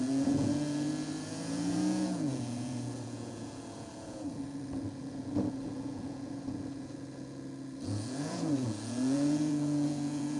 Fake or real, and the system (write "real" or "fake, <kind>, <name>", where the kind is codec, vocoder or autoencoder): fake, vocoder, Vocos